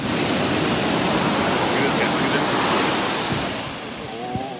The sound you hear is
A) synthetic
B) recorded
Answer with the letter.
B